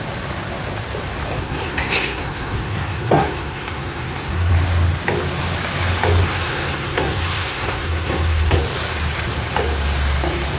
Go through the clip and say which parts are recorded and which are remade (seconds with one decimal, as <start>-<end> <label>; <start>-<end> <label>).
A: 0.0-1.4 recorded; 1.4-4.5 remade; 4.5-6.2 recorded; 6.2-8.6 remade; 8.6-10.6 recorded